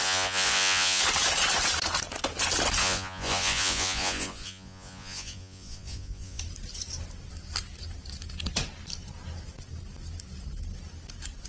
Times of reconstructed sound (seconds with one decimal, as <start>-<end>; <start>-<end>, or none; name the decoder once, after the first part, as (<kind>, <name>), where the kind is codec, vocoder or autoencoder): 0.0-1.0 (vocoder, Vocos); 2.8-6.4